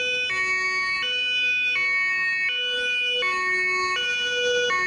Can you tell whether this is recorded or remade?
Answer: recorded